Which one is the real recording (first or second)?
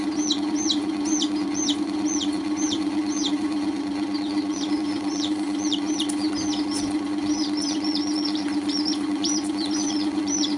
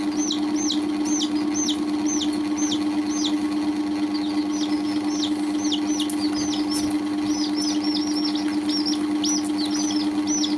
second